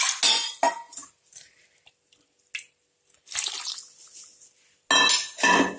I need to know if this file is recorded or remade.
recorded